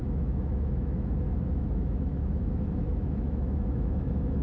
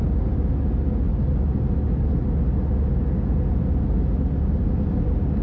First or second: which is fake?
first